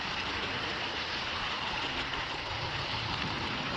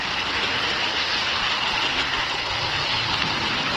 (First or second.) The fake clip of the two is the first